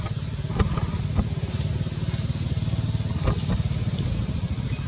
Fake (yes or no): no